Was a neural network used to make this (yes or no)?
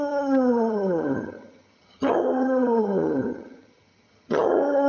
yes